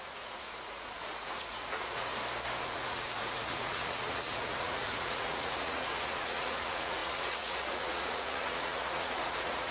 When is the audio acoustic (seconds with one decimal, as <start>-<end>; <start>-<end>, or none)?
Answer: 2.1-2.6